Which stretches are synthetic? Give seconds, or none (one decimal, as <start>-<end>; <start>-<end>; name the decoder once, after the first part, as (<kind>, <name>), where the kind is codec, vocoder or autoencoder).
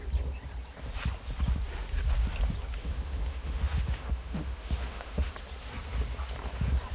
2.8-5.3 (autoencoder, DAC-VAE)